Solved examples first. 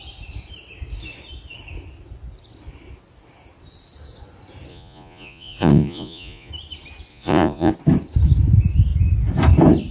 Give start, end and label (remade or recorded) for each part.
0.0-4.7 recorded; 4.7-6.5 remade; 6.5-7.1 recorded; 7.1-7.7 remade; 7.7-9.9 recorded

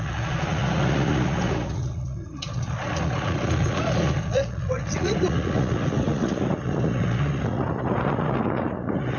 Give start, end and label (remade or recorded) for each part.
0.0-9.2 remade

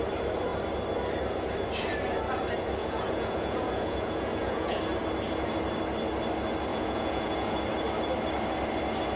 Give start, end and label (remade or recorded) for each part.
0.0-2.8 recorded; 2.8-4.8 remade; 4.8-6.7 recorded; 6.7-7.6 remade; 7.6-9.2 recorded

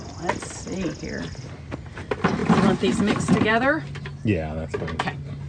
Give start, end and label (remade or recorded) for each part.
0.0-5.5 recorded

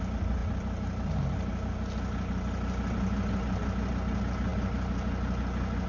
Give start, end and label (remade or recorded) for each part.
0.0-5.9 recorded

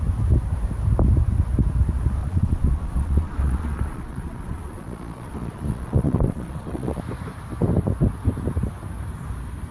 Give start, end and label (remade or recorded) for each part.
0.0-2.2 recorded; 2.2-7.0 remade; 7.0-9.7 recorded

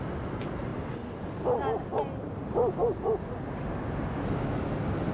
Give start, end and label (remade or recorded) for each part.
0.0-5.1 recorded